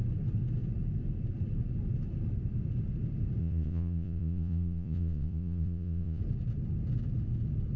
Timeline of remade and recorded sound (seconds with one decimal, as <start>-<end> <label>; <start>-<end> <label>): 0.0-3.4 recorded; 3.4-6.2 remade; 6.2-7.8 recorded